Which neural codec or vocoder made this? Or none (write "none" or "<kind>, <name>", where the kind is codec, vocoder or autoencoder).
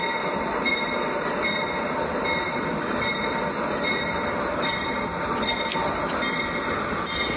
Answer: none